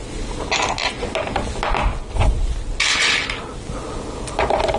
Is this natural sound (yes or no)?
yes